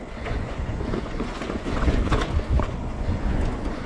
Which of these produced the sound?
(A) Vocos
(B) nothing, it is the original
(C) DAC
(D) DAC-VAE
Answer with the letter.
A